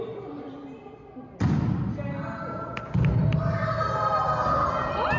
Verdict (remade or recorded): recorded